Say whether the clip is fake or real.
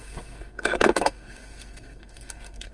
fake